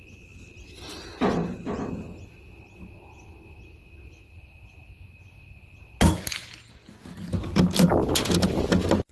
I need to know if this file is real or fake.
real